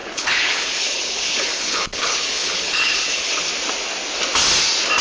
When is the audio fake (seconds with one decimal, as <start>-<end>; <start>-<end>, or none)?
0.0-3.5